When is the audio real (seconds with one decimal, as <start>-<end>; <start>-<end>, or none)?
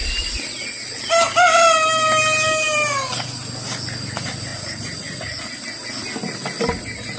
0.0-4.5; 5.6-7.2